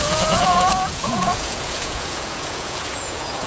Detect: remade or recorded remade